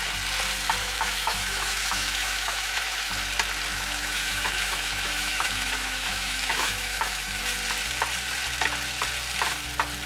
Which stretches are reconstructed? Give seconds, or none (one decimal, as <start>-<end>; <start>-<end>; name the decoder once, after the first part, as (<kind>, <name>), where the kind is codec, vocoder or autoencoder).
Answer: 0.8-3.1 (autoencoder, DAC-VAE); 3.7-7.4